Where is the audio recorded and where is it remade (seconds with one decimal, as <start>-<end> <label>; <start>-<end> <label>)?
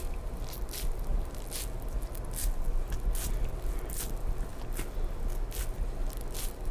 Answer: 0.0-6.7 recorded